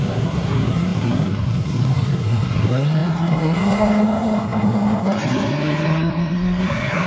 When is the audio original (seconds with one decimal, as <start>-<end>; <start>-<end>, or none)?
none

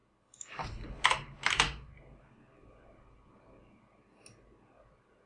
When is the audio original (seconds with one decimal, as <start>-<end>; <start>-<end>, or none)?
0.0-5.3

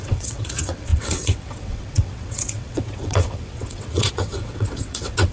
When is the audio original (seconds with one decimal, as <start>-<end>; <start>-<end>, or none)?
none

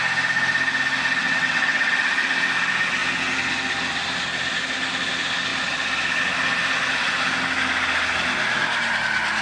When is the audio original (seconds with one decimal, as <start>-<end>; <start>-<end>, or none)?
0.0-1.2; 1.9-9.4

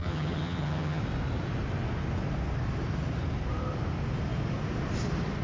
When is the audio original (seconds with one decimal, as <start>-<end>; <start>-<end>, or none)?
1.0-5.4

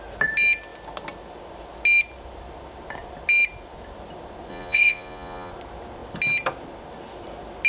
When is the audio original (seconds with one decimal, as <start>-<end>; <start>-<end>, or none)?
0.0-4.5; 5.5-7.7